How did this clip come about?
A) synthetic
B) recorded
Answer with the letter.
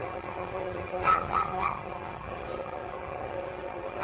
A